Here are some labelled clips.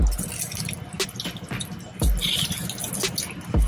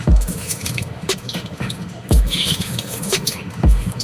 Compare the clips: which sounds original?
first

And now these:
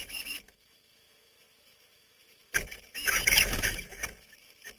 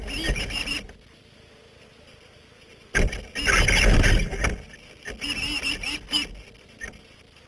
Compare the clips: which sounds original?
second